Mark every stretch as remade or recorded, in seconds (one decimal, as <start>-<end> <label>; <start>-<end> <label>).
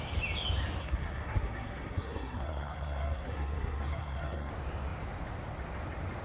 0.0-0.8 recorded; 0.8-4.5 remade; 4.5-6.2 recorded